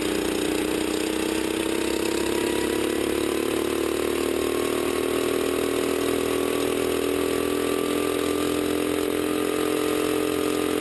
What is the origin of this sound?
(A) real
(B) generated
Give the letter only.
A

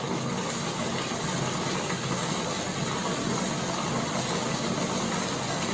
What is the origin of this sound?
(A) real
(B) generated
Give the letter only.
A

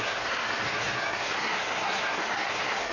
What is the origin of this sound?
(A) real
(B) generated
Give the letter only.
B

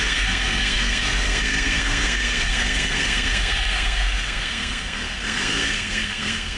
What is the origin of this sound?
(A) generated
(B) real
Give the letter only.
A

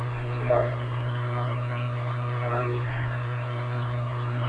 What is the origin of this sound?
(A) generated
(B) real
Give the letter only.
A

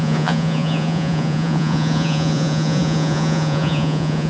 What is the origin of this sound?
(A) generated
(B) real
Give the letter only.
A